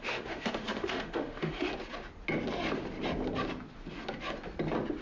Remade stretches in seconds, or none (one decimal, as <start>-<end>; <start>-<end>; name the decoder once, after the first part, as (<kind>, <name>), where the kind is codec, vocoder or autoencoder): 0.0-1.7 (autoencoder, DAC-VAE)